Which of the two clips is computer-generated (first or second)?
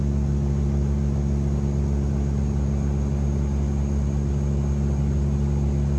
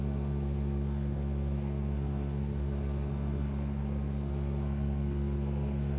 second